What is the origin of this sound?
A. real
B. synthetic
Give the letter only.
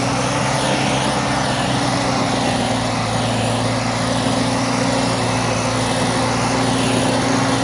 A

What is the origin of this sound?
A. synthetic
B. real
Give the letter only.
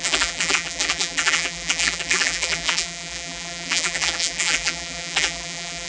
A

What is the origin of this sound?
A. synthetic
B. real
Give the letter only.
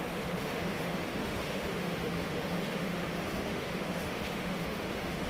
A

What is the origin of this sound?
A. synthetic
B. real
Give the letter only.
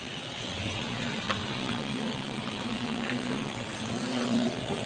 A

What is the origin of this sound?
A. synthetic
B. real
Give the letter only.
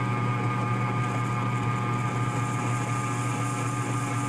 B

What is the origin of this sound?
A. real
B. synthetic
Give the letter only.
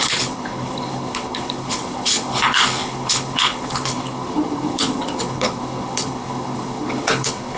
B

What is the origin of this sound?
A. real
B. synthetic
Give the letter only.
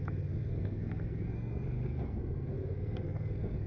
B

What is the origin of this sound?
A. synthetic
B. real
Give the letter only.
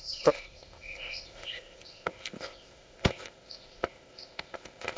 A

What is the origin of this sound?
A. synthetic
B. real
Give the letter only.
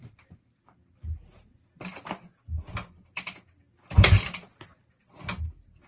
B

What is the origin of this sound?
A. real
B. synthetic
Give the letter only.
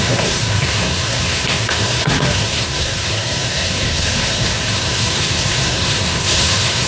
B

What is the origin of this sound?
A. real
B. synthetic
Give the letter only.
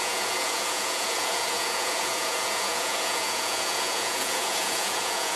B